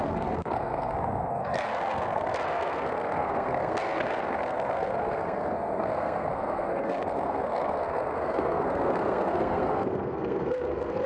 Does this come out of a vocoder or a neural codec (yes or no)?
yes